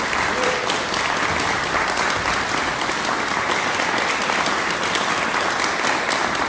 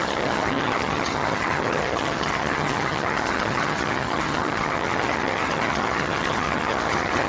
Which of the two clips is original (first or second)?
first